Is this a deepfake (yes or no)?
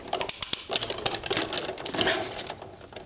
no